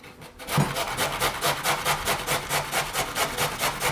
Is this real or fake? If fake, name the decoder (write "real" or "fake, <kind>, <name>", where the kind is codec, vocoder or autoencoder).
real